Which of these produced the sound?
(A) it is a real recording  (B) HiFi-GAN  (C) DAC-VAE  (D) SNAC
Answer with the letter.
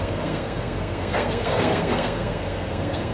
D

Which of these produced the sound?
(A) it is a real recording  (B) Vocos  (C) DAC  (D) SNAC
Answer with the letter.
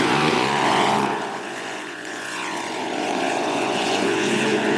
B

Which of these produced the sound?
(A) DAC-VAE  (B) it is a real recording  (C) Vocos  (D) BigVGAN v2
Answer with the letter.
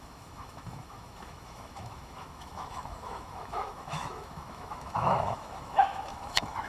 A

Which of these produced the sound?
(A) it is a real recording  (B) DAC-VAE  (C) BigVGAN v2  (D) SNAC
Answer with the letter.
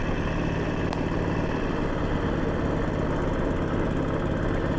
A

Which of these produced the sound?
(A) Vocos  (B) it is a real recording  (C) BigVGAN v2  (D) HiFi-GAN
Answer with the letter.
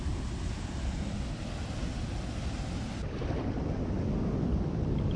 B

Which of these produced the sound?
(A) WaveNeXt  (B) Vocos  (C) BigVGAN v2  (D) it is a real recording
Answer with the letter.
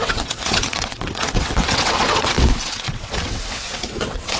A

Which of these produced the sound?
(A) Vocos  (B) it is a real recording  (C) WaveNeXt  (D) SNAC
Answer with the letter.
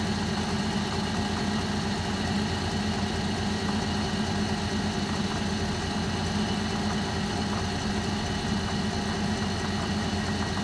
B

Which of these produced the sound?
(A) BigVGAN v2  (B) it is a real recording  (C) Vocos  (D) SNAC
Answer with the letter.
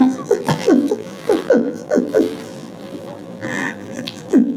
A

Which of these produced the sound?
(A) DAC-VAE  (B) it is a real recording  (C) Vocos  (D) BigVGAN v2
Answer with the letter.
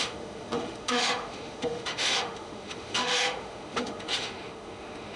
A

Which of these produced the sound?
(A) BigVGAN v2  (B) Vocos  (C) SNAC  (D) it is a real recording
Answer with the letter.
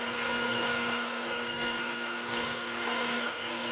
C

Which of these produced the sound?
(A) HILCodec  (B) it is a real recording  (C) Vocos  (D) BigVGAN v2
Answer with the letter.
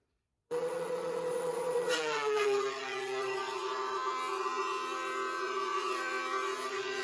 C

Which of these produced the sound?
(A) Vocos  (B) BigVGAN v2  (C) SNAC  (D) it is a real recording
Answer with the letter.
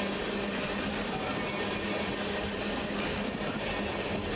D